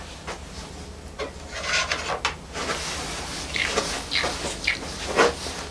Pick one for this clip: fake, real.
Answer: real